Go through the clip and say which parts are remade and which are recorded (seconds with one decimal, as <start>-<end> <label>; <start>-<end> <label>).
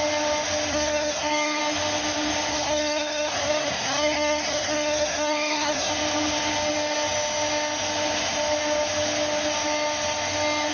0.0-0.7 recorded; 0.7-1.6 remade; 1.6-2.5 recorded; 2.5-5.9 remade; 5.9-10.7 recorded